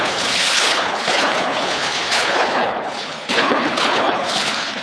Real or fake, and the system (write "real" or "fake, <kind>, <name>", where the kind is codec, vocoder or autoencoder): fake, codec, HILCodec